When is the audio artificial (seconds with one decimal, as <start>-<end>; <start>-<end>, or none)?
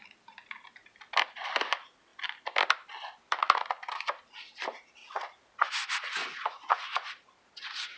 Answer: 5.0-5.7; 6.2-8.0